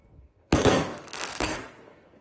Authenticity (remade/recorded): remade